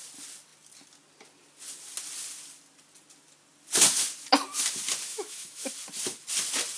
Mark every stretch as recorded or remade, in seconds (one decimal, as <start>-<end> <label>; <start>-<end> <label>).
0.0-5.1 recorded; 5.1-5.7 remade; 5.7-6.8 recorded